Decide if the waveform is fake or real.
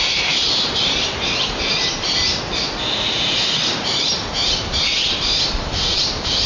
fake